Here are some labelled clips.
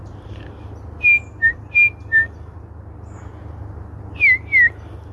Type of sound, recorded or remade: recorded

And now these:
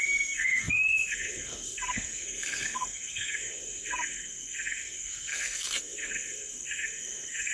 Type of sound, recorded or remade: remade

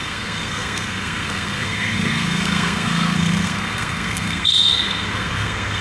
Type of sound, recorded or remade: remade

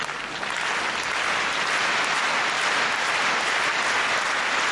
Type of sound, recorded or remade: recorded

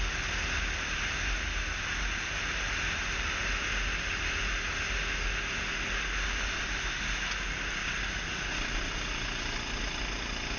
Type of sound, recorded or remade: recorded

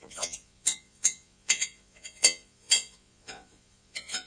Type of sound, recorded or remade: remade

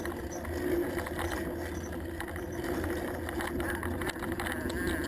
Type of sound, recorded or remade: recorded